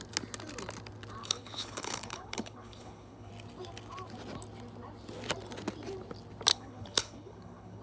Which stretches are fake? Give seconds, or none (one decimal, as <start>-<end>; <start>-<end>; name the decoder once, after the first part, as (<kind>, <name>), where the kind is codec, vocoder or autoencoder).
1.2-3.3 (codec, HILCodec); 6.5-7.8